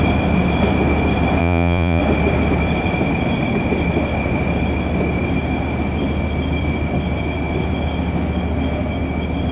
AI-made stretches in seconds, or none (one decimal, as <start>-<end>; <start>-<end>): 1.4-2.0